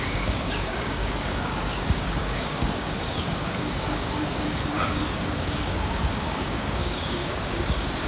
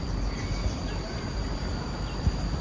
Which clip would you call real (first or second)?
second